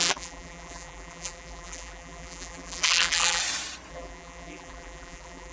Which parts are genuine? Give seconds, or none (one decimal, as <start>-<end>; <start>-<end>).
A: 3.4-3.9